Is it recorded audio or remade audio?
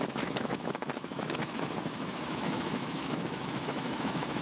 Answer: remade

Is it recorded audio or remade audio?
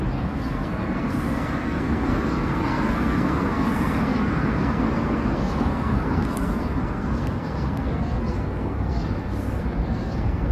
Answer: remade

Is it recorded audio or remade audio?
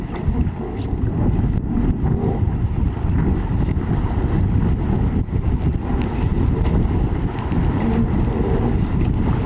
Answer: recorded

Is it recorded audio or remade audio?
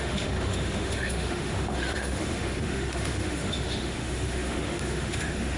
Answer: remade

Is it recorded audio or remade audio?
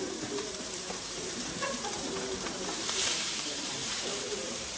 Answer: remade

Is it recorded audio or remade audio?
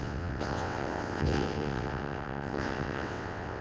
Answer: remade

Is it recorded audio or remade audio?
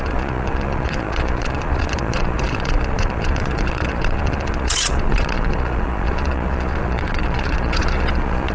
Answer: remade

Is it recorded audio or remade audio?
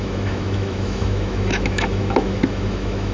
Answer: remade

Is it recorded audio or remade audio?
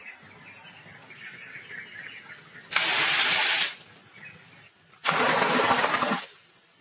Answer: recorded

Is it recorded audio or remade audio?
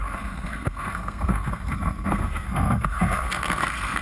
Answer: remade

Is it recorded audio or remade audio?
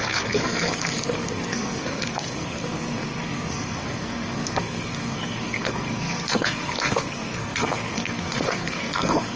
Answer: remade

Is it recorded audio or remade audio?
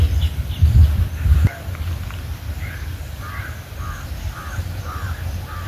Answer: remade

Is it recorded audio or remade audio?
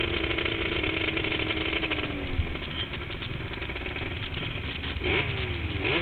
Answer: recorded